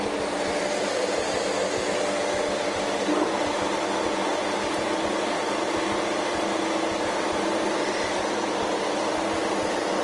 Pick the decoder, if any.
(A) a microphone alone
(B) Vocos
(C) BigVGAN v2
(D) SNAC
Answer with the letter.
A